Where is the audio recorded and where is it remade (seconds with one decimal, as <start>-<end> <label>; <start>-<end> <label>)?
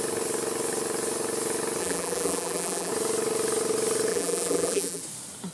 0.0-1.8 recorded; 1.8-2.9 remade; 2.9-4.1 recorded; 4.1-5.0 remade; 5.0-5.5 recorded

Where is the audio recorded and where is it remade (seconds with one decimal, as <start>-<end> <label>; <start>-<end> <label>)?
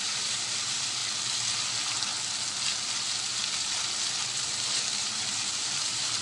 0.0-1.0 remade; 1.0-4.1 recorded; 4.1-6.2 remade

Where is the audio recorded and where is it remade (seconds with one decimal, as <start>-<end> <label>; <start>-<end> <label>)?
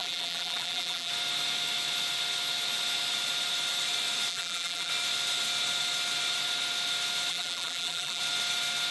0.0-1.1 remade; 1.1-4.3 recorded; 4.3-4.9 remade; 4.9-7.3 recorded; 7.3-8.2 remade; 8.2-8.9 recorded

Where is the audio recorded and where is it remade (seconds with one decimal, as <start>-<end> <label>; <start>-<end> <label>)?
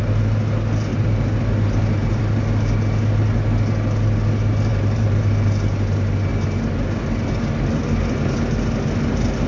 0.0-0.9 recorded; 0.9-2.2 remade; 2.2-4.7 recorded; 4.7-5.3 remade; 5.3-9.5 recorded